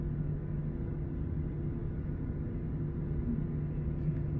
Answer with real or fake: real